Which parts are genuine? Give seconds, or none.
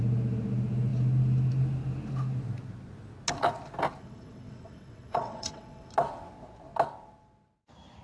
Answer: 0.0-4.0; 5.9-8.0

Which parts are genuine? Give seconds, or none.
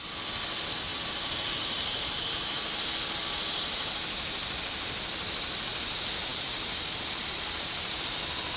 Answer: 0.0-0.9; 2.8-8.6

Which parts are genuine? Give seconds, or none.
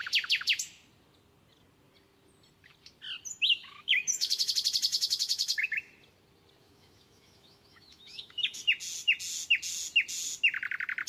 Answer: 0.0-3.3; 4.5-4.9; 5.8-6.6; 8.6-11.1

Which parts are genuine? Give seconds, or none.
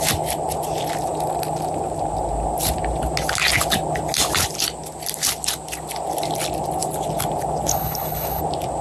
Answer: 0.0-7.7; 8.4-8.8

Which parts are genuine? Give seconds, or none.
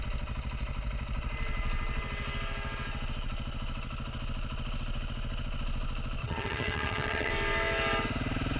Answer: 0.0-6.2; 7.3-8.6